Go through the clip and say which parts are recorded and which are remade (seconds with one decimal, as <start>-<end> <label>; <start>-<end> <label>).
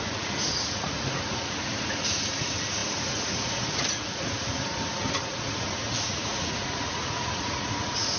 0.0-8.2 remade